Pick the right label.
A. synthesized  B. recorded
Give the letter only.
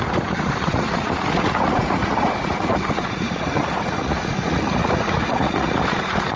A